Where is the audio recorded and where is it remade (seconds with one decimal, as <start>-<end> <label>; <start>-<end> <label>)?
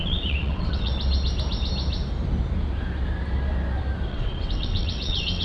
0.0-0.9 remade; 0.9-4.1 recorded; 4.1-5.4 remade